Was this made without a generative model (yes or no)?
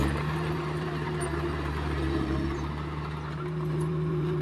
no